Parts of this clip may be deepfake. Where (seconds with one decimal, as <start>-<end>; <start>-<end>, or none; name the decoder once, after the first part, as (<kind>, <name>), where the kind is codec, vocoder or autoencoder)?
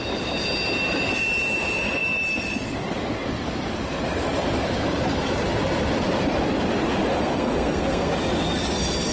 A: 7.1-8.1 (codec, SNAC)